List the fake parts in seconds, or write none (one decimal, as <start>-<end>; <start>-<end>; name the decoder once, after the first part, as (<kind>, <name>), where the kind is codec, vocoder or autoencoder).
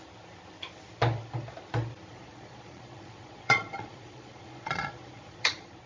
2.1-5.9 (vocoder, Vocos)